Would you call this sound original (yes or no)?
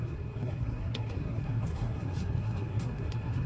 no